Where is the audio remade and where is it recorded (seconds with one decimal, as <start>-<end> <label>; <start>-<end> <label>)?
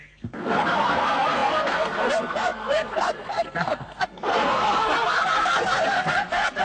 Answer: 0.0-6.6 remade